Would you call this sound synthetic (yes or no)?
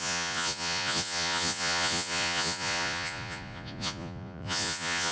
yes